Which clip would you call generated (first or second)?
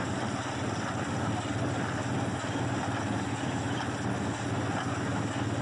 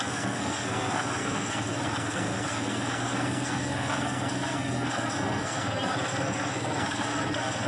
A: second